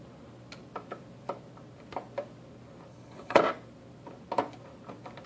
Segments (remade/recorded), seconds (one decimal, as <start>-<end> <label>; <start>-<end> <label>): 0.0-2.9 recorded; 2.9-3.4 remade; 3.4-5.3 recorded